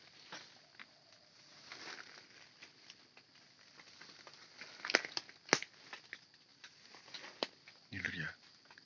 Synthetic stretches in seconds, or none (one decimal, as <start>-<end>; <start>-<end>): none

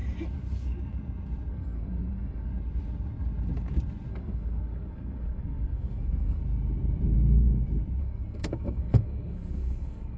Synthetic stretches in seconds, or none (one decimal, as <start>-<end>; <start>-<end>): 1.5-2.5; 4.1-6.4; 8.0-10.2